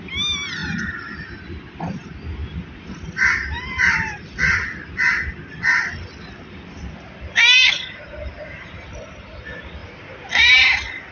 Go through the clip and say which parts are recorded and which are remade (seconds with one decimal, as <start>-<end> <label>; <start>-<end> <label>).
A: 0.0-11.1 recorded